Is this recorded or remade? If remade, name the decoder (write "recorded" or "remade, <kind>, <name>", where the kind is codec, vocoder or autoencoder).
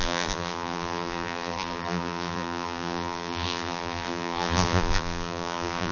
remade, vocoder, BigVGAN v2